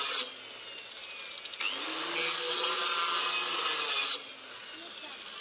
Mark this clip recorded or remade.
recorded